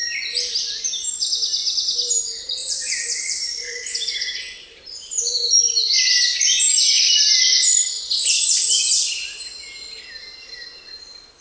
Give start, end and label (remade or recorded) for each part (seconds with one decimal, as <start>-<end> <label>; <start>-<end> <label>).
0.0-0.8 remade; 0.8-2.6 recorded; 2.6-3.8 remade; 3.8-11.4 recorded